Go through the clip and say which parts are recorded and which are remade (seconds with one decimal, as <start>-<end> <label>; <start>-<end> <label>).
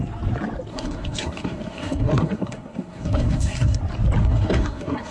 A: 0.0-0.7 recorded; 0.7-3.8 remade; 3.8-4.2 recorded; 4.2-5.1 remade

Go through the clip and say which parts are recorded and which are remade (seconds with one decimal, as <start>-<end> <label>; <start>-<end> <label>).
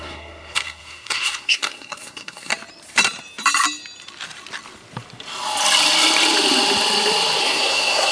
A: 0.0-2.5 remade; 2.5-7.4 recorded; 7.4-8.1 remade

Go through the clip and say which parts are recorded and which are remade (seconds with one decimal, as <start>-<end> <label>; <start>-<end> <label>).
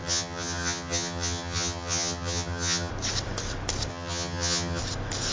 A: 0.0-2.9 remade; 2.9-3.9 recorded; 3.9-4.8 remade; 4.8-5.3 recorded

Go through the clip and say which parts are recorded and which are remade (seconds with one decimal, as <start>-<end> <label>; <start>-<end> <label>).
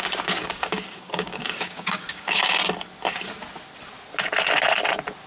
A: 0.0-0.4 recorded; 0.4-2.5 remade; 2.5-5.3 recorded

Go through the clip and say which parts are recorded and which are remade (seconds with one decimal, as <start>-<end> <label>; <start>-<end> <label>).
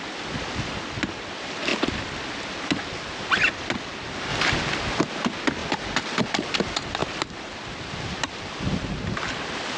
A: 0.0-9.8 recorded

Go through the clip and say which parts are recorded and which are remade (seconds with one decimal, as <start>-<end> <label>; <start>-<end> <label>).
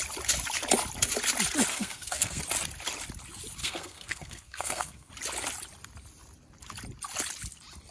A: 0.0-1.7 recorded; 1.7-2.4 remade; 2.4-3.6 recorded; 3.6-5.1 remade; 5.1-7.9 recorded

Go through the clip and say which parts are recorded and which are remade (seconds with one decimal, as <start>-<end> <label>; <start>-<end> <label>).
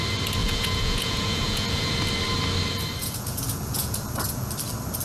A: 0.0-0.4 recorded; 0.4-1.9 remade; 1.9-3.0 recorded; 3.0-4.5 remade; 4.5-5.0 recorded